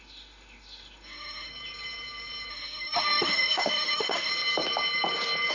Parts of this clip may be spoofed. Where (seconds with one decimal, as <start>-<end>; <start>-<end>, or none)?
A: 0.0-1.5; 2.5-4.3